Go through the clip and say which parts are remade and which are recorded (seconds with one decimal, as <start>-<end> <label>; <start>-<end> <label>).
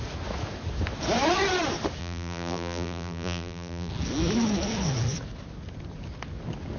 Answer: 0.0-2.0 recorded; 2.0-3.9 remade; 3.9-6.8 recorded